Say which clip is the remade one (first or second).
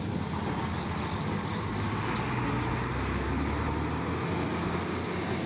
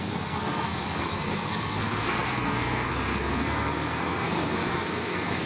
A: second